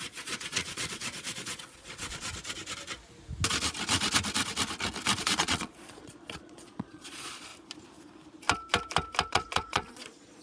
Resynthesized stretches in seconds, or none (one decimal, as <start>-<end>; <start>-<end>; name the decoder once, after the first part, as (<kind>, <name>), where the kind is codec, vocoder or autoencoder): 0.0-2.3 (vocoder, Vocos); 5.2-7.5; 9.3-10.4